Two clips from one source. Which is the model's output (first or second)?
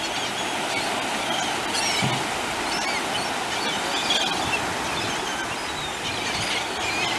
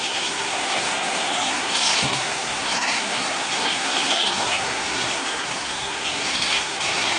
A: second